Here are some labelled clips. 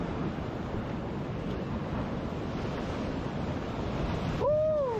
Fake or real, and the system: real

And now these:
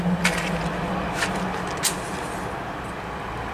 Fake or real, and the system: real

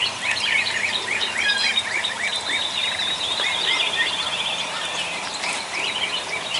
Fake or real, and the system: fake, vocoder, BigVGAN v2